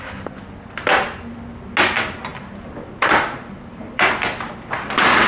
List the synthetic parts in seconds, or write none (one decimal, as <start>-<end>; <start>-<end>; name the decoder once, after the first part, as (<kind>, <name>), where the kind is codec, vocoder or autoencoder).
2.3-4.1 (vocoder, BigVGAN v2)